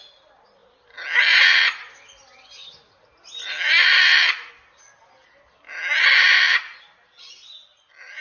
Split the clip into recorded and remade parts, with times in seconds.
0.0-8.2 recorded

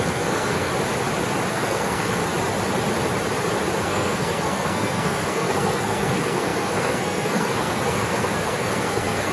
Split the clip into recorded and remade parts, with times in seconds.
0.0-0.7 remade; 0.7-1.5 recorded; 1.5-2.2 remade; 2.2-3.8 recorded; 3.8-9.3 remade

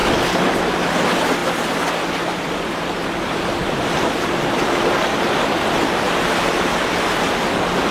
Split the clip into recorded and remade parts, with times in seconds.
0.0-7.9 recorded

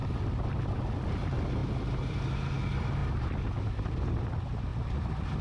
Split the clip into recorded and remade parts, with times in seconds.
0.0-5.4 recorded